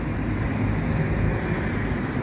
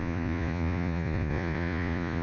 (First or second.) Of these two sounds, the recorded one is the first